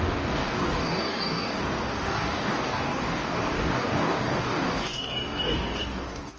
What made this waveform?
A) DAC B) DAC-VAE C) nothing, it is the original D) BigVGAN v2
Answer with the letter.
A